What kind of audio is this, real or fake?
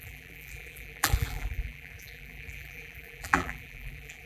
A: fake